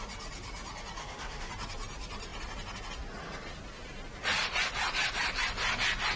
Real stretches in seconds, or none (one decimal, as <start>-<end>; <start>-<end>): 0.0-1.0; 1.5-6.2